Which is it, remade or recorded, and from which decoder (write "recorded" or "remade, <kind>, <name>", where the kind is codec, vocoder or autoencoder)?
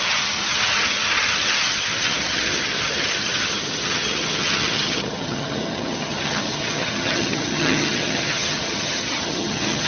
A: remade, vocoder, HiFi-GAN